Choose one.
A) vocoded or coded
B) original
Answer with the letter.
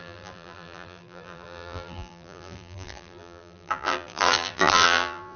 A